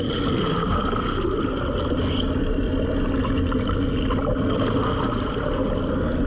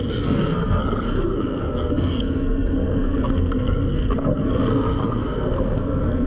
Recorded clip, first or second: first